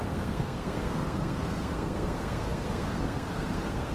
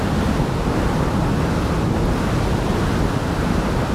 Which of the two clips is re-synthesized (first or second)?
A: first